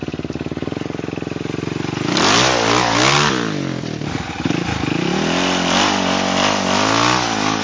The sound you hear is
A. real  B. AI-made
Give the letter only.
A